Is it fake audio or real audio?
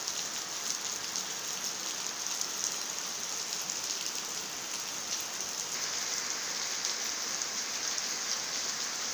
real